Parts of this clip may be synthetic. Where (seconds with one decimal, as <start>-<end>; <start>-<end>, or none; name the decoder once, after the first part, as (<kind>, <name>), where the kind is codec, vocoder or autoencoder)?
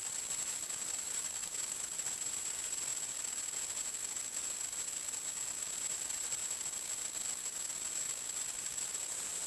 0.0-2.9 (vocoder, BigVGAN v2); 5.5-6.4; 8.5-9.5